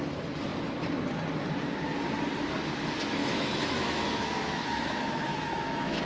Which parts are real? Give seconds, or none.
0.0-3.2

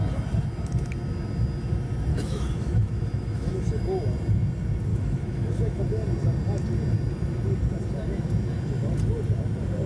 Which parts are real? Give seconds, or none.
0.0-2.1; 3.8-4.9; 5.8-9.9

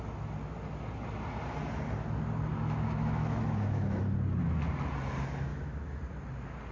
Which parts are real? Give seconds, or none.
0.0-2.5; 4.0-5.5; 6.0-6.7